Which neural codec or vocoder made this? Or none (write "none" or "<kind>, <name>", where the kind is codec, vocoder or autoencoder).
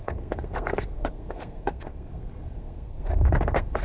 codec, SNAC